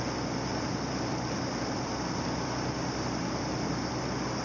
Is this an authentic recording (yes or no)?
yes